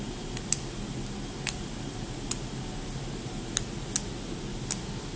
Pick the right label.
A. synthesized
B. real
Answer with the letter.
B